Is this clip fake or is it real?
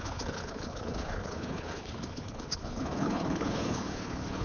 fake